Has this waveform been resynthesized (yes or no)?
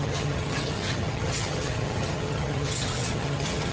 yes